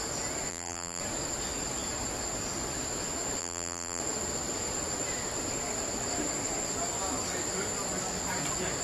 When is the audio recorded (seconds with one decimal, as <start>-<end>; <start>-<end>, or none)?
0.0-0.5; 1.0-3.4; 4.0-8.8